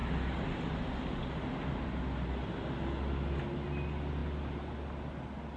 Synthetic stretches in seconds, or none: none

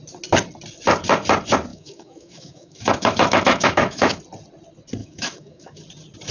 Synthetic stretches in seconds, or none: 1.7-4.2 (autoencoder, DAC-VAE); 5.0-5.8